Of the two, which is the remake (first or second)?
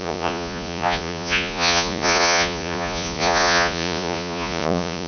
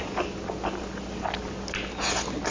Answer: first